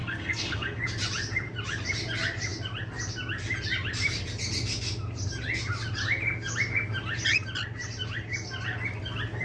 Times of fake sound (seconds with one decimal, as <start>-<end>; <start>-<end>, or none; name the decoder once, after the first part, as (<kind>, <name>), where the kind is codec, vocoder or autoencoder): 0.0-0.8 (codec, SNAC)